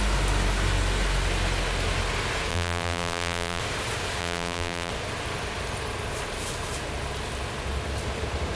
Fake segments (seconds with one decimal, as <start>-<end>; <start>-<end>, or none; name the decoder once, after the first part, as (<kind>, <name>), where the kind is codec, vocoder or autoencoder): 2.5-3.6 (vocoder, BigVGAN v2); 4.2-4.9